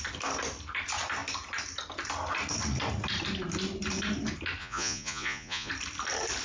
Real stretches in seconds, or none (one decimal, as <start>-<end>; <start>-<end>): 0.0-4.6; 5.7-6.4